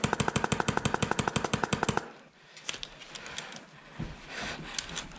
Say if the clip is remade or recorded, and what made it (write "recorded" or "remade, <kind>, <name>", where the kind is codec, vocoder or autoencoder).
recorded